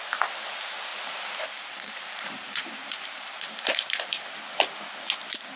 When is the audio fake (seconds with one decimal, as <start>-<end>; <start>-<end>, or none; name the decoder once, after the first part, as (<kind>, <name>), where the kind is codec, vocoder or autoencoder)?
0.9-4.0 (vocoder, BigVGAN v2)